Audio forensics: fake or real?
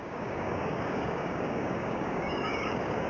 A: fake